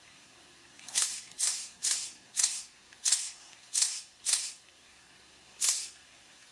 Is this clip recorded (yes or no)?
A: no